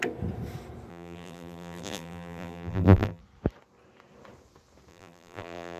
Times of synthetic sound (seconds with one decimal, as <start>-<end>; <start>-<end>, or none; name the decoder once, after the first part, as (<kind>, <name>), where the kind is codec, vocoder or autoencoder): 0.9-3.2 (vocoder, BigVGAN v2); 4.9-5.8